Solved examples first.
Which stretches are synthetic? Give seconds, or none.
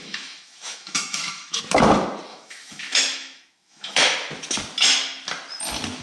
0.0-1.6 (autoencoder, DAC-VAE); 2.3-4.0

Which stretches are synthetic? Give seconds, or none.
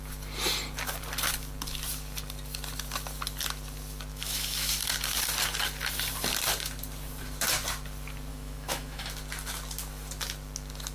4.1-4.7 (autoencoder, DAC-VAE); 8.3-9.1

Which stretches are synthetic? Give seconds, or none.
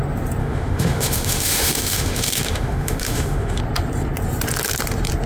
0.4-3.6 (autoencoder, DAC-VAE)